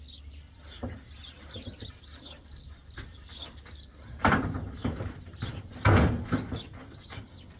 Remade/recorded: remade